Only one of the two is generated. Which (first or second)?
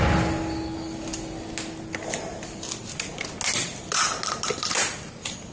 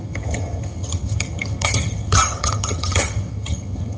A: second